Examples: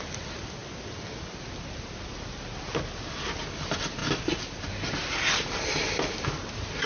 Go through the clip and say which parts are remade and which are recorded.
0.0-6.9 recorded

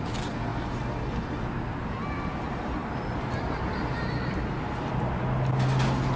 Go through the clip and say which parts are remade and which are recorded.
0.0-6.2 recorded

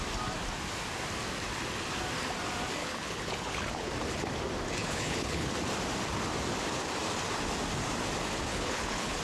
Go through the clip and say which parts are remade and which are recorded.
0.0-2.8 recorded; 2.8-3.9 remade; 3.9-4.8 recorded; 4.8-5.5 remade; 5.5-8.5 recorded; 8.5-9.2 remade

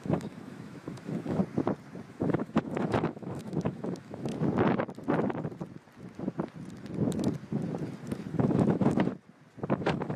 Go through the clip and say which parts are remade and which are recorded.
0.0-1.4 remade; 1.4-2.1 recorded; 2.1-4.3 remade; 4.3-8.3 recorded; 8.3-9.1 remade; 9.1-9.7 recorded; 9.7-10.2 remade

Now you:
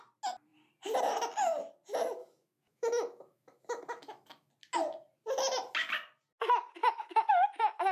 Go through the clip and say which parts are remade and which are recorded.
0.0-2.2 recorded; 2.2-4.5 remade; 4.5-6.8 recorded; 6.8-7.3 remade; 7.3-7.9 recorded

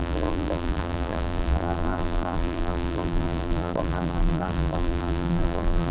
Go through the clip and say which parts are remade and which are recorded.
0.0-5.9 remade